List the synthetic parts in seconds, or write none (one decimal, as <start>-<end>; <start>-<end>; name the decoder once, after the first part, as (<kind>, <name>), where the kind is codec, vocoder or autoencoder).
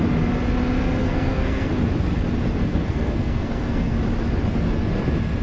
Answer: 1.0-1.7 (codec, SNAC); 2.6-4.0